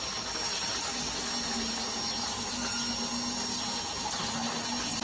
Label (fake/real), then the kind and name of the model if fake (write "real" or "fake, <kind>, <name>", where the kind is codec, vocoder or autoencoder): real